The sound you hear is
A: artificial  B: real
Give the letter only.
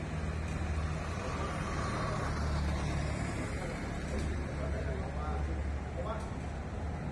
B